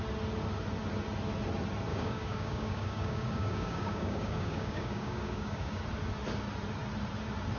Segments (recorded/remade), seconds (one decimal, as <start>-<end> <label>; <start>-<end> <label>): 0.0-1.9 recorded; 1.9-5.8 remade; 5.8-7.6 recorded